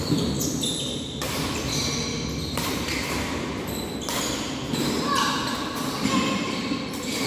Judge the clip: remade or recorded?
recorded